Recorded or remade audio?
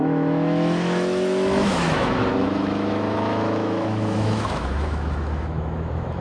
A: remade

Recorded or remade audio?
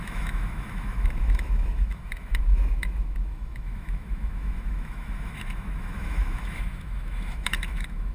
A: remade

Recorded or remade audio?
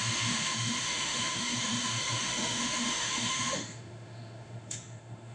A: remade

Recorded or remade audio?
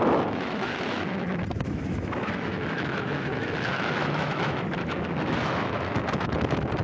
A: remade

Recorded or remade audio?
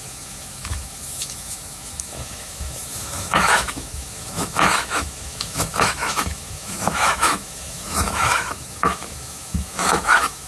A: remade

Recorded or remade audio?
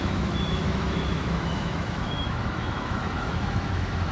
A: remade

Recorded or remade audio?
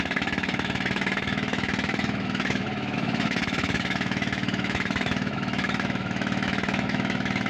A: remade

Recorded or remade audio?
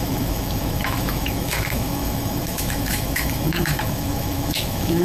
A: remade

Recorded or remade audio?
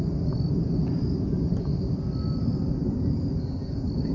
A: recorded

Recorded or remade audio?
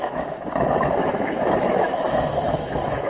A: remade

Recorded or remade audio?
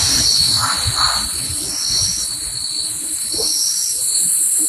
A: recorded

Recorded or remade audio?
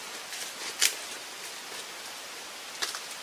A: recorded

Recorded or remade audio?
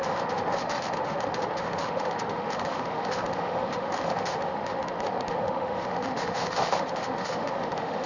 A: remade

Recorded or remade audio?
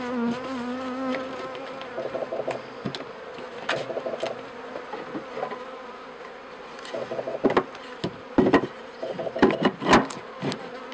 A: recorded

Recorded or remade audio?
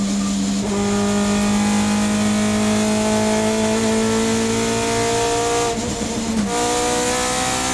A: recorded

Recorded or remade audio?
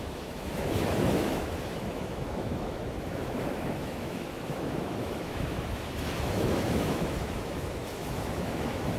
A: remade